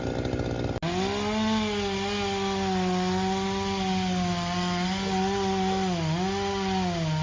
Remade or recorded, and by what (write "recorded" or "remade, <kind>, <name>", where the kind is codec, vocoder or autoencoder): recorded